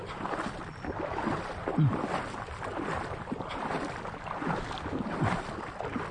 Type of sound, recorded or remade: recorded